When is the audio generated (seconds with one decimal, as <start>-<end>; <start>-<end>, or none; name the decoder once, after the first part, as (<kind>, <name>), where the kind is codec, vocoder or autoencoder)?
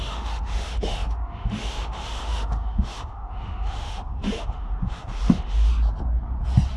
0.0-5.7 (autoencoder, DAC-VAE)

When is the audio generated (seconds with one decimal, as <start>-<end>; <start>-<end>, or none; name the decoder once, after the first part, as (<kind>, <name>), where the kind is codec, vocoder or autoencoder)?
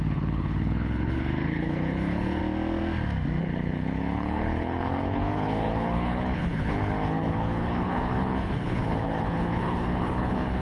0.0-2.4 (codec, HILCodec); 3.4-10.6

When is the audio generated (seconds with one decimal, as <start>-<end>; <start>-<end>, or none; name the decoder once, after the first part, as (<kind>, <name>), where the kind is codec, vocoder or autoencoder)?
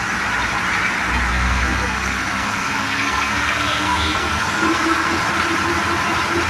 1.3-5.2 (codec, SNAC)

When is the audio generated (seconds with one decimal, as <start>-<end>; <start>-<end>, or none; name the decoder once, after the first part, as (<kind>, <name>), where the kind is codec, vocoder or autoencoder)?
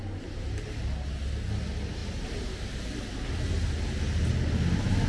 none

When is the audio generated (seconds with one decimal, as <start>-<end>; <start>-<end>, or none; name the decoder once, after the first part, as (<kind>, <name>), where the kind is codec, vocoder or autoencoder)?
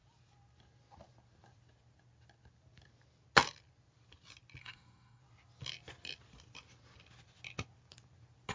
4.6-5.2 (codec, SNAC)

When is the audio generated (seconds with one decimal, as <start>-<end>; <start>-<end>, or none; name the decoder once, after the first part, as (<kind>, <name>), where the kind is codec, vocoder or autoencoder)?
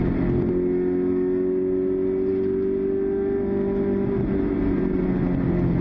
none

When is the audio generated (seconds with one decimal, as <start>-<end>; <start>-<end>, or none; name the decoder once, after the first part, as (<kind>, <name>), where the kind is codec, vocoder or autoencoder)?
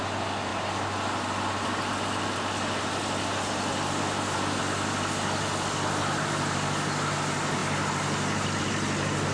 none